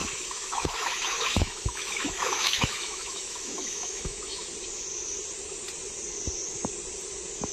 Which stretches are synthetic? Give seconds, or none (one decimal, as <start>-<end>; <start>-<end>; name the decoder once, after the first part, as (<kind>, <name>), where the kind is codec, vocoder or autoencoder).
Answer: 0.0-4.5 (autoencoder, DAC-VAE)